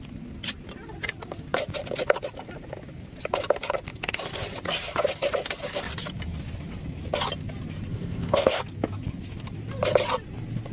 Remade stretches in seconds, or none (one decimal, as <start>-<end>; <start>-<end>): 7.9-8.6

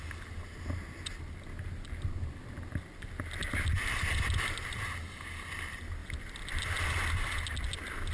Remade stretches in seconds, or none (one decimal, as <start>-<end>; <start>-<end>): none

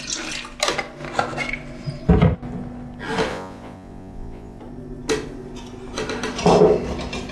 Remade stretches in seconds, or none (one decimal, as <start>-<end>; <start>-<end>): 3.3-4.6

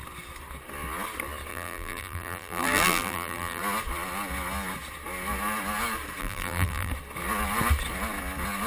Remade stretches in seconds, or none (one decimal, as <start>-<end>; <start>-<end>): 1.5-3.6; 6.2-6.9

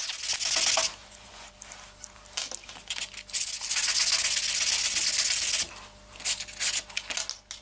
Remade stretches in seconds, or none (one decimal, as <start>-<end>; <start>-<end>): 1.0-1.5

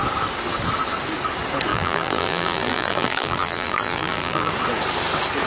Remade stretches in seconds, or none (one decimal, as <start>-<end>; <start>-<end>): 1.7-4.5